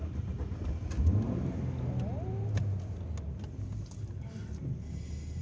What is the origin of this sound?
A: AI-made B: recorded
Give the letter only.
B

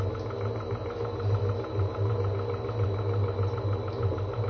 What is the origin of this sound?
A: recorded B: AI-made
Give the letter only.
A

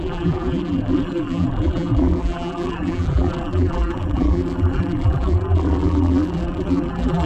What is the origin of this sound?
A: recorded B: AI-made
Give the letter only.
B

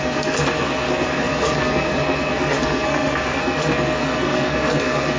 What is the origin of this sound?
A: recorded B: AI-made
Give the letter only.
B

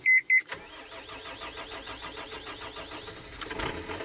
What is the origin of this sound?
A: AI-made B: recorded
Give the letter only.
B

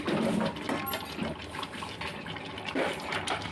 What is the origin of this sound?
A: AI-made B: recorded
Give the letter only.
B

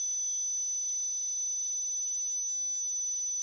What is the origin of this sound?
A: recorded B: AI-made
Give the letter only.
A